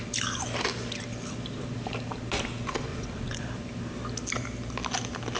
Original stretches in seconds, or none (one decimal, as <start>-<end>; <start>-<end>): 0.0-2.9; 3.4-5.4